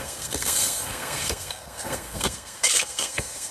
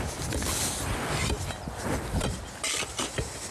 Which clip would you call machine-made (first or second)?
first